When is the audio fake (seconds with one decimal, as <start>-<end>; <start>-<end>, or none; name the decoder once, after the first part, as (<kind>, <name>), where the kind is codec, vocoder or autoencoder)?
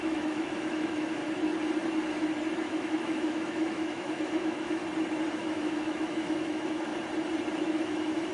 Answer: 0.0-1.2 (autoencoder, DAC-VAE); 2.6-4.8; 5.3-6.9; 7.6-8.3